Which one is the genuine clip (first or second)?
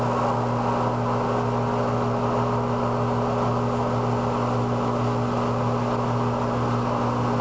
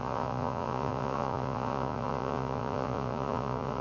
first